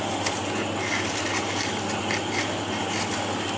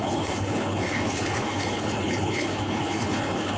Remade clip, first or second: second